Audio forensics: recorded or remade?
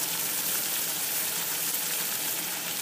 remade